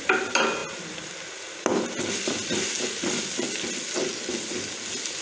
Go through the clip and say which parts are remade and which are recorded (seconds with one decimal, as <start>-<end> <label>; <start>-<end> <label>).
0.0-5.2 recorded